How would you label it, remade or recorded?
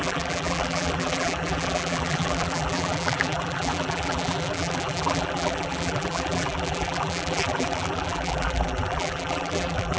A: remade